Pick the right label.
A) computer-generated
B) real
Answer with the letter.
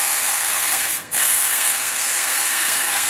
A